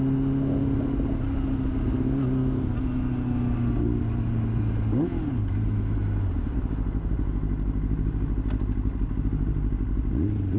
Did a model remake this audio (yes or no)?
no